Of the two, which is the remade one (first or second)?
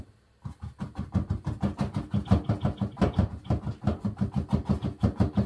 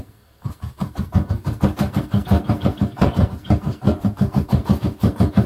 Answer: second